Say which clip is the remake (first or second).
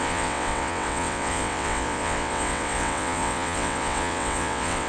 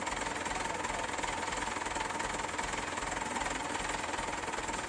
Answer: first